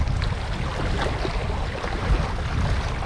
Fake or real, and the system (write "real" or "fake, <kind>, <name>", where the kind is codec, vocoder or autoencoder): real